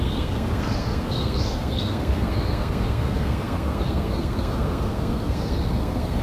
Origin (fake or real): fake